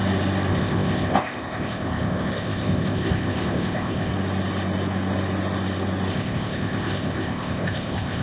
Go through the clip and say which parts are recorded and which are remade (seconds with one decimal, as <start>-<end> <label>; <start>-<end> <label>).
0.0-0.5 recorded; 0.5-4.1 remade; 4.1-6.1 recorded; 6.1-8.2 remade